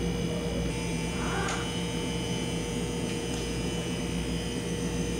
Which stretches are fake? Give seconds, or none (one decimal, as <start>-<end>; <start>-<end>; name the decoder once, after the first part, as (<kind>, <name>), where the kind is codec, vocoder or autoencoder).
0.9-4.0 (vocoder, Vocos)